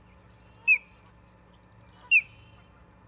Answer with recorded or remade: recorded